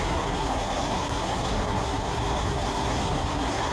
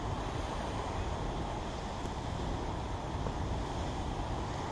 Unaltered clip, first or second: second